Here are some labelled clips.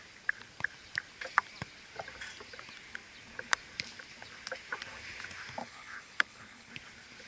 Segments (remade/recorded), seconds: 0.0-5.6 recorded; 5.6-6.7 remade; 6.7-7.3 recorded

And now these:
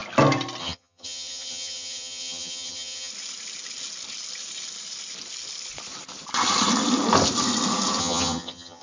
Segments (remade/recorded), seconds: 0.0-0.6 recorded; 0.6-3.1 remade; 3.1-8.0 recorded; 8.0-8.8 remade

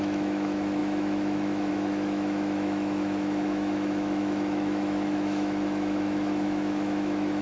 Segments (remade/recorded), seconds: 0.0-7.4 remade

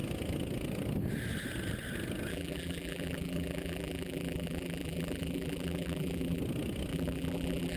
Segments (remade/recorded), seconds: 0.0-2.3 recorded; 2.3-6.4 remade; 6.4-6.9 recorded; 6.9-7.8 remade

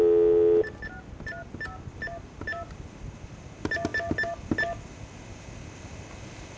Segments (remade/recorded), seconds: 0.0-6.6 recorded

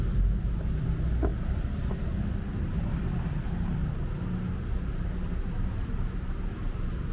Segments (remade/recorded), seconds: 0.0-7.1 recorded